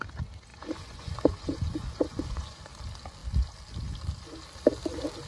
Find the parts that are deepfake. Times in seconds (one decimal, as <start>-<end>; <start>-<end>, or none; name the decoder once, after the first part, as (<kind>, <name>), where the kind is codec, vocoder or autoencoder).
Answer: 0.5-2.6 (vocoder, Vocos)